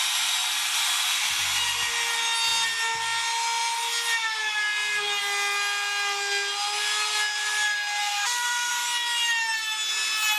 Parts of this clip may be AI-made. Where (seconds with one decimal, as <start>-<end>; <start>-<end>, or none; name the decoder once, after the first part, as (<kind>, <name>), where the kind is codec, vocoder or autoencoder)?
8.0-8.7 (codec, SNAC)